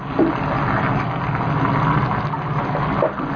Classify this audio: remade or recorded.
recorded